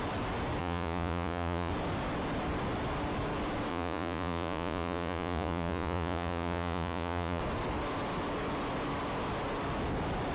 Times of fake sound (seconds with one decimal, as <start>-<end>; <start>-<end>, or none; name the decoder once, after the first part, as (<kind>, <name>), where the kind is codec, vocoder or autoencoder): 0.6-1.7 (vocoder, Vocos); 3.7-7.4